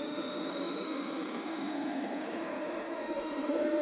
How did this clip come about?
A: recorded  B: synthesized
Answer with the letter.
B